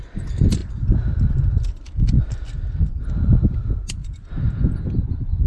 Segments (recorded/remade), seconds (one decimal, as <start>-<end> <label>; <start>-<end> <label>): 0.0-5.5 recorded